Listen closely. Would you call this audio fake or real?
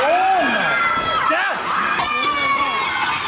real